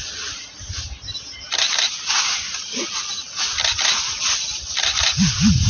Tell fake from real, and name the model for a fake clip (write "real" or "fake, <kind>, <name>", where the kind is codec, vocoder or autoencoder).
real